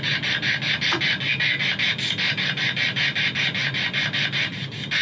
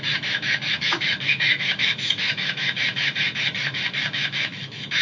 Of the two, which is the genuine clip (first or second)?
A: first